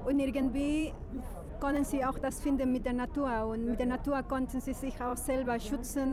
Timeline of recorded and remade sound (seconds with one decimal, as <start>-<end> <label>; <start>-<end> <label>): 0.0-2.8 remade; 2.8-3.9 recorded; 3.9-6.1 remade

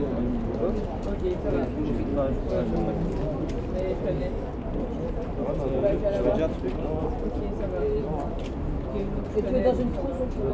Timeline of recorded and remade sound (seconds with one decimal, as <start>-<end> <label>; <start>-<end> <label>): 0.0-10.5 recorded